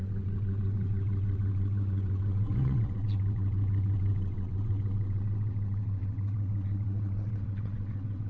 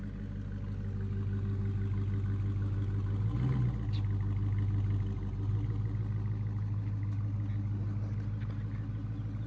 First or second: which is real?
second